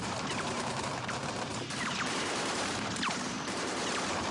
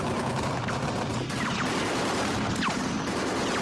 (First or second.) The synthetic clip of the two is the first